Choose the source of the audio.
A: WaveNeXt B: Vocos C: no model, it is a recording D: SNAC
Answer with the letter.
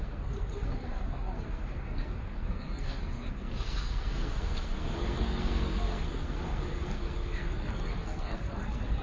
D